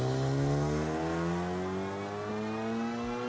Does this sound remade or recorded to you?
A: recorded